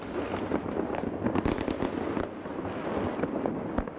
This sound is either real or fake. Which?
real